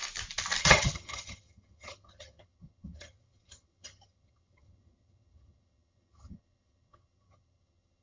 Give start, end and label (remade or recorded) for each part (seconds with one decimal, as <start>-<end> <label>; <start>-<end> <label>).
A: 0.0-0.6 recorded; 0.6-8.0 remade